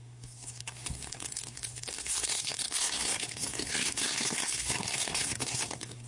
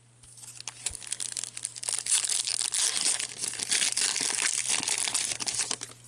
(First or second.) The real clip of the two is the second